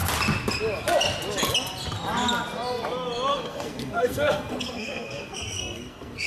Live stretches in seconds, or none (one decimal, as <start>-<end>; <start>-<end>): 0.0-3.3